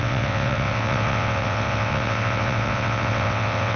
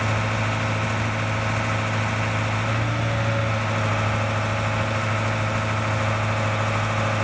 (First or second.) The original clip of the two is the second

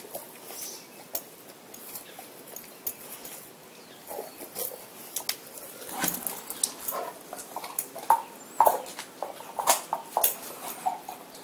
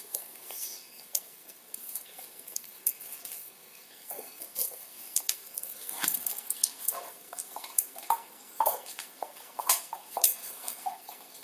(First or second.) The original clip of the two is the first